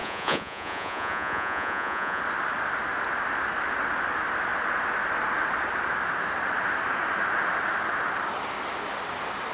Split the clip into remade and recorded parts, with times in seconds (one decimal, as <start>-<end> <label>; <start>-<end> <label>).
0.0-2.2 remade; 2.2-9.5 recorded